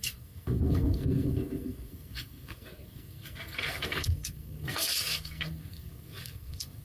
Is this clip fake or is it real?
fake